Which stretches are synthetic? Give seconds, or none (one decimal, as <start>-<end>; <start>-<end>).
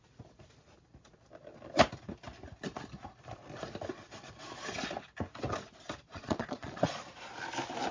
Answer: 6.1-7.0